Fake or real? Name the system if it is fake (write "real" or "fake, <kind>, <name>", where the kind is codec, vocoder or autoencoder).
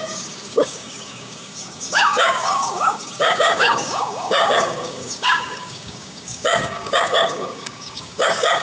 fake, codec, DAC